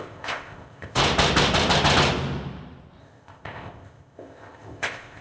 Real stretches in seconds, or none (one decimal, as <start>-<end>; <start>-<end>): 1.0-3.0